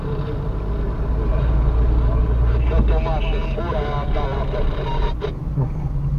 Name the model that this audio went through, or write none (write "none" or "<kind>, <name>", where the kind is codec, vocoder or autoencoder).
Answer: none